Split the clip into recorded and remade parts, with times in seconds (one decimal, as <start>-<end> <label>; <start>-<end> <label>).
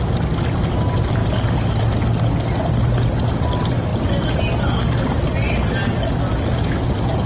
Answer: 0.0-7.3 recorded